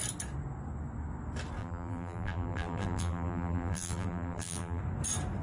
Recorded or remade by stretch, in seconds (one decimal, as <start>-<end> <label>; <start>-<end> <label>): 0.0-1.6 recorded; 1.6-4.8 remade; 4.8-5.4 recorded